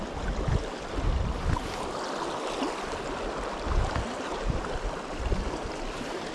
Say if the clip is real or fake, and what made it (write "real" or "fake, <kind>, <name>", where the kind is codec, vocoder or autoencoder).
real